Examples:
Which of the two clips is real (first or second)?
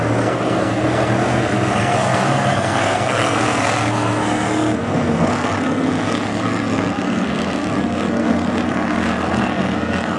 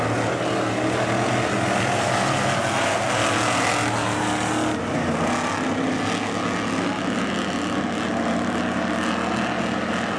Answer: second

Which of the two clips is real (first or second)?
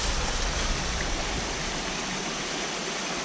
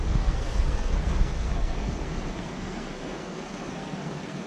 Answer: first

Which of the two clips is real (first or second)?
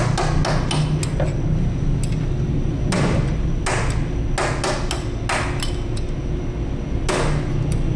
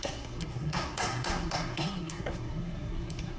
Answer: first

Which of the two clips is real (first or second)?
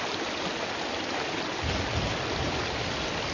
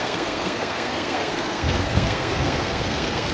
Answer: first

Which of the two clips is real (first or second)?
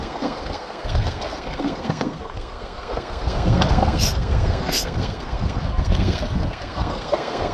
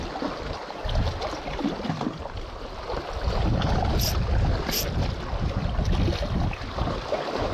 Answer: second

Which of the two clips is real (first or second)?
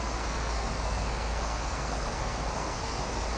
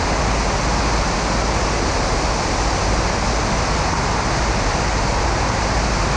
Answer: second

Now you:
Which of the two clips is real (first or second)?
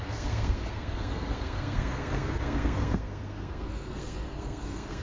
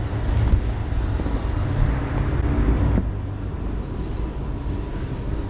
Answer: second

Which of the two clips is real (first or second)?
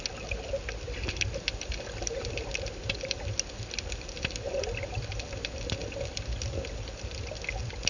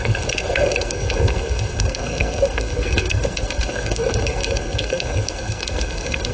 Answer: first